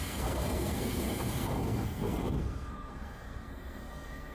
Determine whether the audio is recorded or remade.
remade